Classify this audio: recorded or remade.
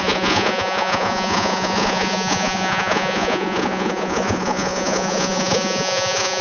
remade